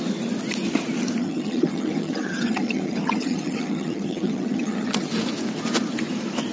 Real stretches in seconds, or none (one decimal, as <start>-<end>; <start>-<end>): 0.0-1.2; 5.1-6.5